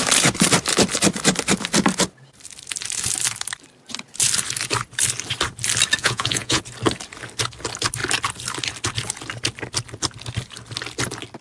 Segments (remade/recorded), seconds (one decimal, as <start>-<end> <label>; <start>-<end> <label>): 0.0-6.0 recorded; 6.0-6.6 remade; 6.6-11.4 recorded